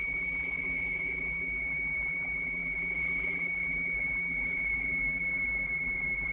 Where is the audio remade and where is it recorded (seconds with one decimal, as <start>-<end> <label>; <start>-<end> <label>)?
0.0-6.3 remade